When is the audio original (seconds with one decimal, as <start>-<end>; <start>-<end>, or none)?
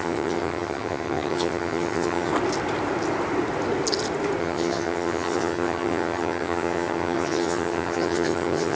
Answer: 2.3-4.4